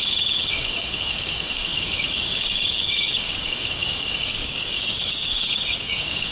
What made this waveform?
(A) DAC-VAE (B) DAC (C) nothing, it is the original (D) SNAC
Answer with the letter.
B